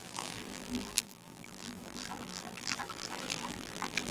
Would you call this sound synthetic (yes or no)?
yes